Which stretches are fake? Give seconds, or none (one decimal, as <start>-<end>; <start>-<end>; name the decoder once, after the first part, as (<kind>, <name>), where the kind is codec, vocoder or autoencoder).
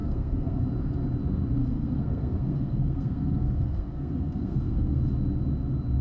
0.0-0.6 (codec, SNAC); 1.6-5.0